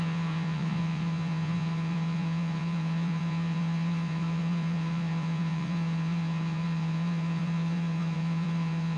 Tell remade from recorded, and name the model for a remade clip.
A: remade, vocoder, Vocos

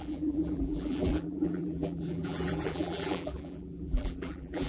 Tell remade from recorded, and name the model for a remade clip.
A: remade, vocoder, BigVGAN v2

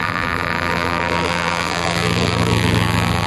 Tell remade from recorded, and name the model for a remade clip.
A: remade, vocoder, BigVGAN v2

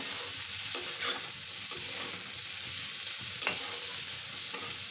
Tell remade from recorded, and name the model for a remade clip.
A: recorded